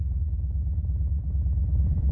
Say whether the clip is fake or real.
fake